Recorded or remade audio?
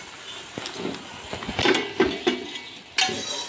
recorded